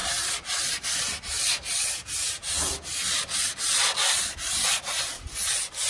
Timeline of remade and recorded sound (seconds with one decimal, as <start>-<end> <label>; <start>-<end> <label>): 0.0-5.9 recorded